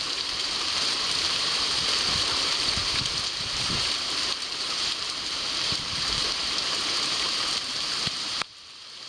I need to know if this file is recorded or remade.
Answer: remade